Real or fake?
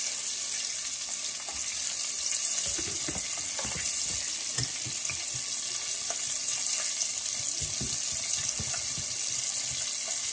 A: real